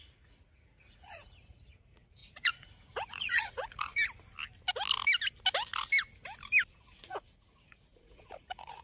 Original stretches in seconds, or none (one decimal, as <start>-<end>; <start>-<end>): 3.9-6.8